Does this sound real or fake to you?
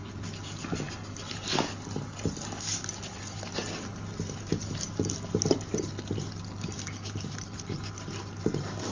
real